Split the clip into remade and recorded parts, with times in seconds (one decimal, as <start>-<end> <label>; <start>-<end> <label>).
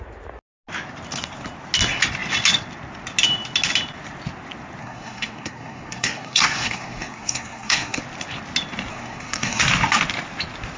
0.0-4.8 recorded; 4.8-8.0 remade; 8.0-8.9 recorded; 8.9-9.6 remade; 9.6-10.8 recorded